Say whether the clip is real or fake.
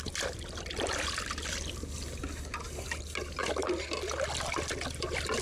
real